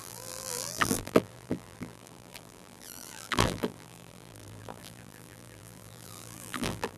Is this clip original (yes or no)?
no